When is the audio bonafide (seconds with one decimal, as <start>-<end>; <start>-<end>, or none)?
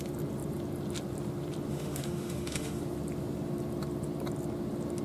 0.0-1.7; 2.8-5.0